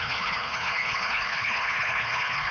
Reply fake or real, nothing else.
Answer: fake